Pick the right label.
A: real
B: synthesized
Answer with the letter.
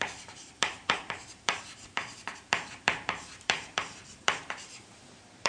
B